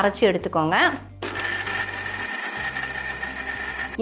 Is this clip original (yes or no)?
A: yes